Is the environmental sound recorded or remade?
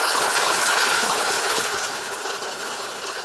remade